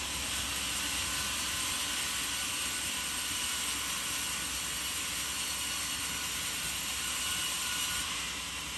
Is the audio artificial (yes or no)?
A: no